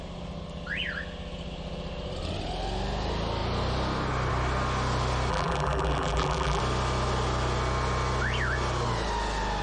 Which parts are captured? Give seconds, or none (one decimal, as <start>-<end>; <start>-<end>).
0.0-5.3; 6.6-9.6